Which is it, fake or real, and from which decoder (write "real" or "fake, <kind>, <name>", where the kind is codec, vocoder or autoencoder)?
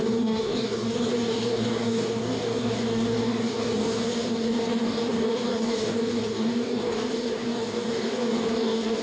fake, codec, DAC